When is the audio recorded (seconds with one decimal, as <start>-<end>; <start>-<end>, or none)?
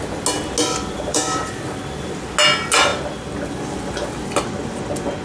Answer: 0.0-1.1; 1.8-5.2